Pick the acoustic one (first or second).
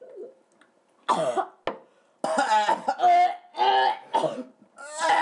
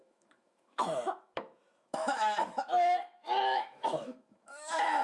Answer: first